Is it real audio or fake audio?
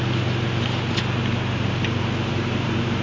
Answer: real